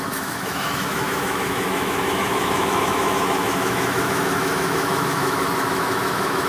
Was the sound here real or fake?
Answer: fake